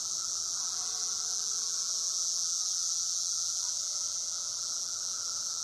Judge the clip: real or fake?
fake